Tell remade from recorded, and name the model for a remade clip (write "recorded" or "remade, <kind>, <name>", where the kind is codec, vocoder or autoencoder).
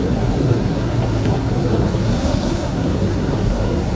remade, codec, SNAC